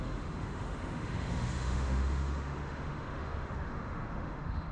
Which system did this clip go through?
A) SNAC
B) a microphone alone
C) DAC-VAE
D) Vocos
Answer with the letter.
C